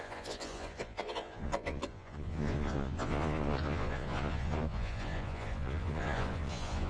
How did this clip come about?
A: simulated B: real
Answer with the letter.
A